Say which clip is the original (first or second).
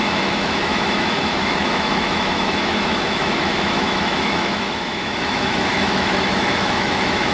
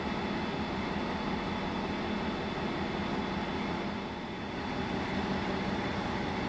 second